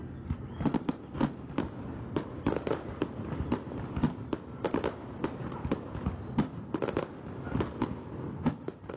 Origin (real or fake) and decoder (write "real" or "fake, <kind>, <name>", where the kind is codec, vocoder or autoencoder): real